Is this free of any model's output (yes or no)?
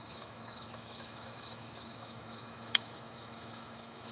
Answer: no